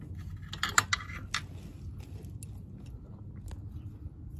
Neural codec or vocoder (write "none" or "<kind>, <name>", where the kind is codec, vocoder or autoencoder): none